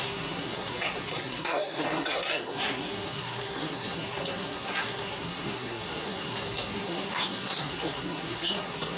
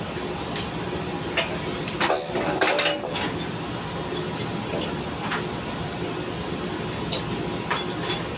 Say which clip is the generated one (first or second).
first